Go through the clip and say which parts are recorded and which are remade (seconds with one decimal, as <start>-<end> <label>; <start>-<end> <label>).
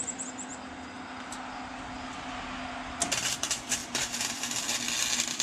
0.0-3.8 recorded; 3.8-4.3 remade; 4.3-5.4 recorded